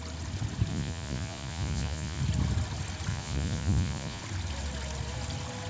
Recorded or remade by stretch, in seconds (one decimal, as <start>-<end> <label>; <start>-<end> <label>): 0.0-0.7 recorded; 0.7-2.2 remade; 2.2-3.1 recorded; 3.1-4.2 remade; 4.2-5.7 recorded